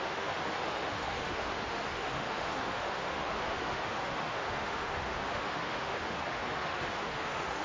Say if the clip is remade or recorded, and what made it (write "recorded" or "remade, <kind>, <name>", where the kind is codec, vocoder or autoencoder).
remade, autoencoder, DAC-VAE